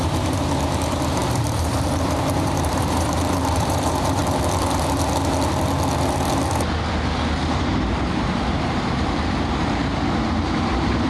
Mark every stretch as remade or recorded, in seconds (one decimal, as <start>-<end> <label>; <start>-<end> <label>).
0.0-4.2 remade; 4.2-7.4 recorded; 7.4-11.1 remade

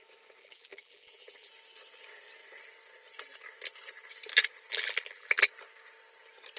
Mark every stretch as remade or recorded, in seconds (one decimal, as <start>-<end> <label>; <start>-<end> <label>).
0.0-0.4 recorded; 0.4-1.5 remade; 1.5-4.7 recorded; 4.7-5.5 remade; 5.5-6.6 recorded

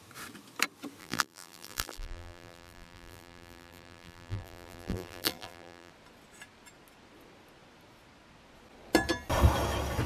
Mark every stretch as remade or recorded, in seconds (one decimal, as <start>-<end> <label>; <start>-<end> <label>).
0.0-1.0 recorded; 1.0-5.9 remade; 5.9-10.1 recorded

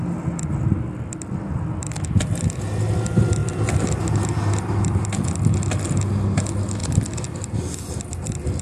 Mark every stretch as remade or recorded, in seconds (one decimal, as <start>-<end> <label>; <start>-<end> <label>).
0.0-3.4 recorded; 3.4-4.0 remade; 4.0-8.6 recorded

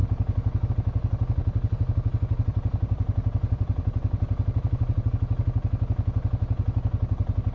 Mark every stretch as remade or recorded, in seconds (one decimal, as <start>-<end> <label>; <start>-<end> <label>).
0.0-1.4 recorded; 1.4-5.1 remade; 5.1-7.5 recorded